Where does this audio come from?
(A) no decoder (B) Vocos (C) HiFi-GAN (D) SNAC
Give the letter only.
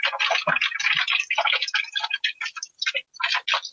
A